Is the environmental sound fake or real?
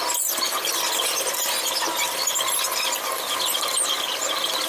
real